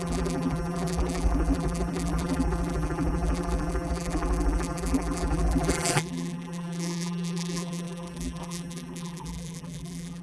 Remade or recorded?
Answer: remade